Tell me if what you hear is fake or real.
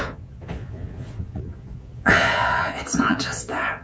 fake